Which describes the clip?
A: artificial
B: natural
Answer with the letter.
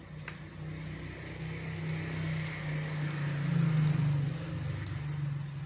B